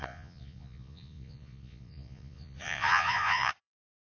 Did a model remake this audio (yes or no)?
yes